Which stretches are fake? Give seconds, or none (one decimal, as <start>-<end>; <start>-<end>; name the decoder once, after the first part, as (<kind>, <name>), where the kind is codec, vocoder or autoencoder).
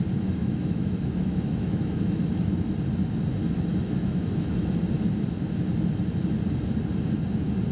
0.4-2.7 (autoencoder, DAC-VAE); 3.7-4.7